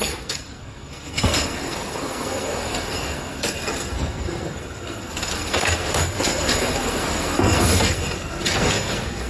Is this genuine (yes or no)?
no